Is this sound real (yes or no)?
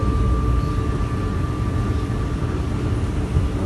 yes